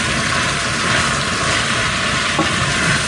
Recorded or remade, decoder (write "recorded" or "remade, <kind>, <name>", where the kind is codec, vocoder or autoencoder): recorded